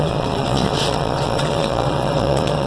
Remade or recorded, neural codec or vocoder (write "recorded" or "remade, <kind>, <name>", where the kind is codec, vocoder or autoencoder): remade, vocoder, Vocos